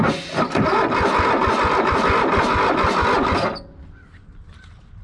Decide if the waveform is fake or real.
real